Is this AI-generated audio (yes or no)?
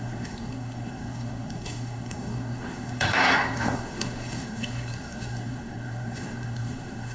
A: yes